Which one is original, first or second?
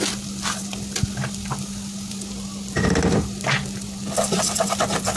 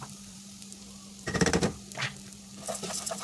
first